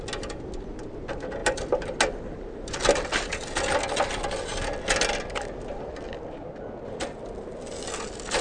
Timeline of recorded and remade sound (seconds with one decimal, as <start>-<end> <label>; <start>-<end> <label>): 0.0-8.4 recorded